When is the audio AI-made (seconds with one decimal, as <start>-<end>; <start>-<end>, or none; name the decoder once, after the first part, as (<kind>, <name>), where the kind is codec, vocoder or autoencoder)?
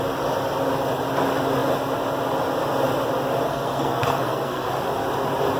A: 3.5-4.7 (codec, SNAC)